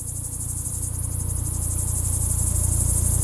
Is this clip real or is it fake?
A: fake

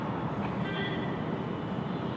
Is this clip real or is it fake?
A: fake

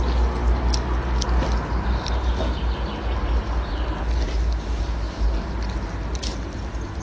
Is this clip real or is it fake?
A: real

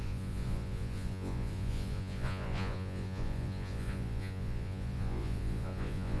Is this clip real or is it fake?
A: fake